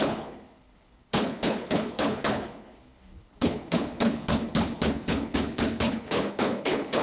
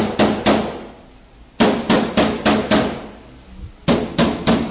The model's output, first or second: first